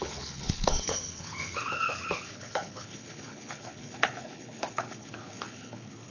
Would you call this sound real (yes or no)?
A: no